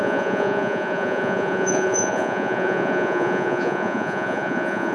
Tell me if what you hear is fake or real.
fake